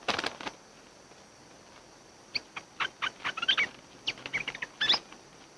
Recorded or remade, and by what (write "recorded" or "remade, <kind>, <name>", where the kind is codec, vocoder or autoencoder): recorded